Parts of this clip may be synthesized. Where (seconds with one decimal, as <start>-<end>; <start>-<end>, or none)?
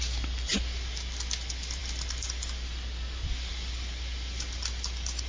none